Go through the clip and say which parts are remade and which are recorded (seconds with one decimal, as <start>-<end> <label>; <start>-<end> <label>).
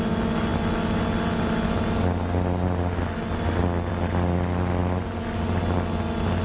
0.0-6.4 recorded